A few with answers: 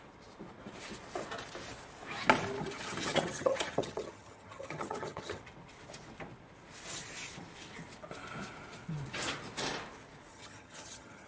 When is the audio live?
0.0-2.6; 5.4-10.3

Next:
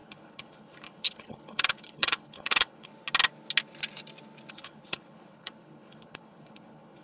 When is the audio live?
2.9-4.5

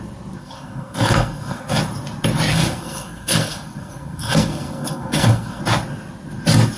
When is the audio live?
0.0-0.4; 1.8-2.5; 5.6-6.8

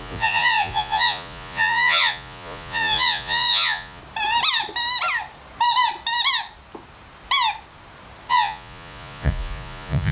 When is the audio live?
4.0-8.3

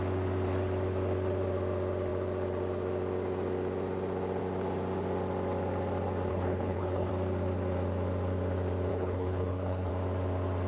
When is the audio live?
0.0-6.3; 7.1-8.9; 9.9-10.7

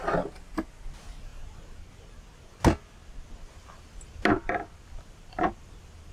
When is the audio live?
0.0-6.1

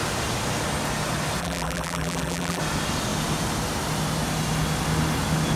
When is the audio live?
0.0-1.4; 2.6-5.6